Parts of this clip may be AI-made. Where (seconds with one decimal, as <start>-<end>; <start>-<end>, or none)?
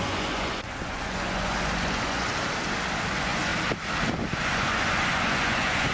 0.0-2.3; 3.1-3.5; 4.4-5.9